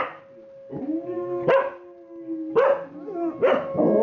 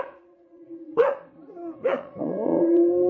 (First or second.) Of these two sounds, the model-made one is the second